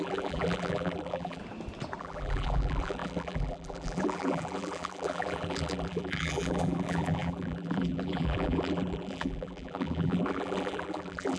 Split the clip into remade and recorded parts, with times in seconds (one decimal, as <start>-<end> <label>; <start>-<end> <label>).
0.0-1.4 remade; 1.4-2.0 recorded; 2.0-11.4 remade